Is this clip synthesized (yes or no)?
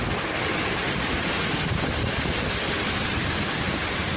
no